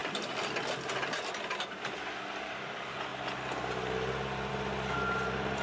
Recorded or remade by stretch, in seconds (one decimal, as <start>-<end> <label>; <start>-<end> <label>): 0.0-5.6 recorded